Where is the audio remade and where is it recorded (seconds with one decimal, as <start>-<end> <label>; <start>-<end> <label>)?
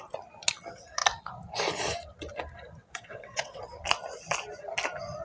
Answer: 0.0-2.8 recorded; 2.8-3.7 remade; 3.7-5.2 recorded